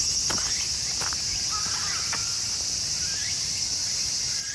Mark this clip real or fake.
real